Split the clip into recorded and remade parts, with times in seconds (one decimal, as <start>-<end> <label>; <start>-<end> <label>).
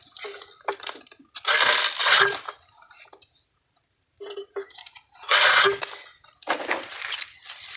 0.0-2.0 recorded; 2.0-2.7 remade; 2.7-3.1 recorded; 3.1-5.6 remade; 5.6-7.8 recorded